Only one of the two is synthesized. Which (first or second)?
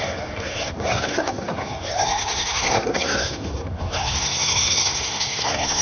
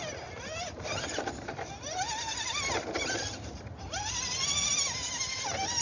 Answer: first